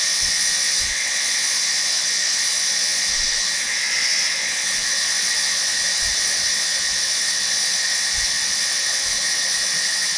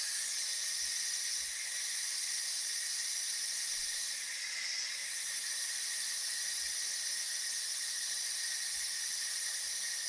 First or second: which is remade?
first